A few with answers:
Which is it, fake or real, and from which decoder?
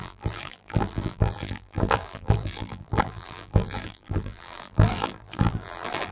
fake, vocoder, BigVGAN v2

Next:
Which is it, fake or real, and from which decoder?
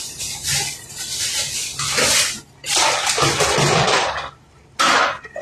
real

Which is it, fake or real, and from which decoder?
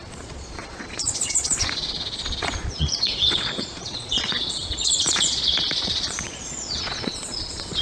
fake, vocoder, Vocos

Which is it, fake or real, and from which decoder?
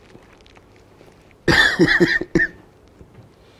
real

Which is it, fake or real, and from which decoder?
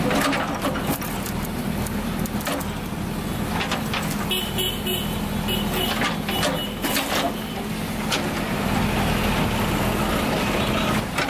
real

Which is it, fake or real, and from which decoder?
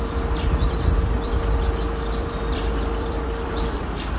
fake, vocoder, BigVGAN v2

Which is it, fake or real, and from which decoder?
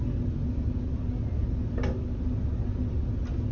real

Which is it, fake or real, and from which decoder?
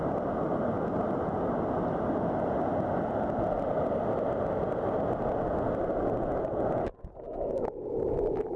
real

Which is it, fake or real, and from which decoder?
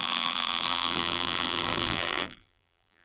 fake, vocoder, BigVGAN v2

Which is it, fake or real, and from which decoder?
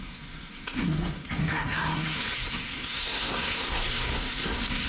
fake, codec, SNAC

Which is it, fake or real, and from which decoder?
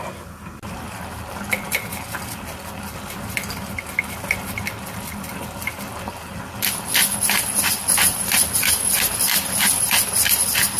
real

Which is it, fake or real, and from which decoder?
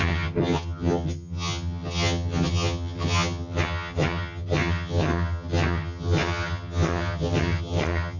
fake, vocoder, HiFi-GAN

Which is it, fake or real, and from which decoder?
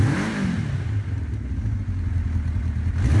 real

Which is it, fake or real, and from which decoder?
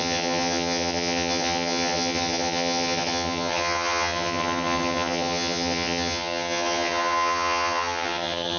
fake, vocoder, HiFi-GAN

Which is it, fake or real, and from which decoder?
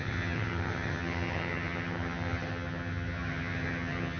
fake, vocoder, HiFi-GAN